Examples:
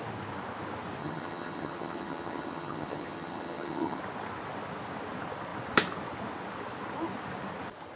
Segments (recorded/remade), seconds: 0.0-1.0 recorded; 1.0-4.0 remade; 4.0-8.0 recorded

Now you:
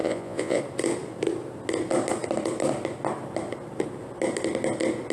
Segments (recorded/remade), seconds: 0.0-0.6 remade; 0.6-5.1 recorded

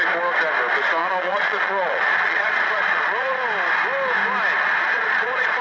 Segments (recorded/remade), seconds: 0.0-1.0 recorded; 1.0-3.5 remade; 3.5-4.9 recorded; 4.9-5.6 remade

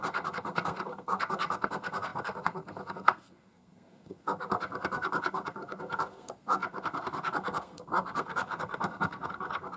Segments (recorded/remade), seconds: 0.0-9.8 remade